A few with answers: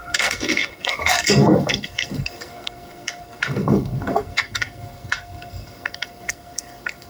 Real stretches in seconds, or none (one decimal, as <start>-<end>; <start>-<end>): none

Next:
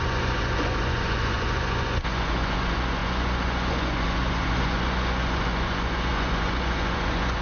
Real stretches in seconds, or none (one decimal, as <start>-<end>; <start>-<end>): none

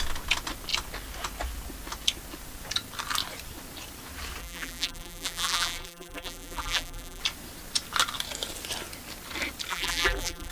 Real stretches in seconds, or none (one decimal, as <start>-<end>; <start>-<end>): 0.0-4.4; 7.2-9.7

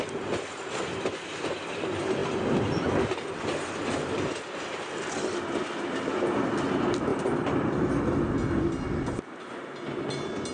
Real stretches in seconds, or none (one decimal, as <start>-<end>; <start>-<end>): 0.0-10.5

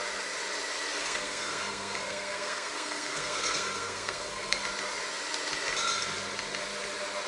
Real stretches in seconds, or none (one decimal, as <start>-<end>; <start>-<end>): 0.0-1.0; 4.6-7.3

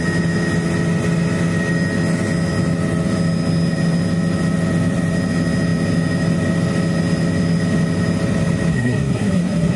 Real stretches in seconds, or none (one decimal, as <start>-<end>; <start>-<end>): 0.0-8.7